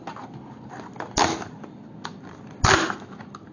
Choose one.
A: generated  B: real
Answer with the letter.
B